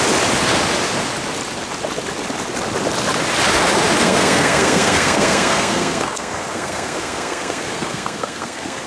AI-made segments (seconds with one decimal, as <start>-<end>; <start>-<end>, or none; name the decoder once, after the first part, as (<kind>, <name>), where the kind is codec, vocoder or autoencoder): 4.0-8.9 (codec, SNAC)